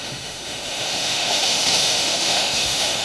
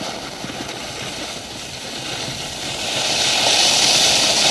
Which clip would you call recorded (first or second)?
second